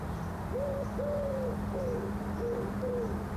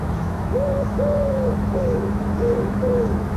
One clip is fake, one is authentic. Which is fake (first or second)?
second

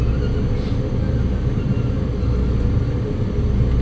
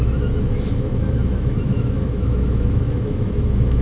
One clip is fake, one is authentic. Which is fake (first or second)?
second